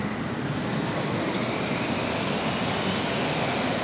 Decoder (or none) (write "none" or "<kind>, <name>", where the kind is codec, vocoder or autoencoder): none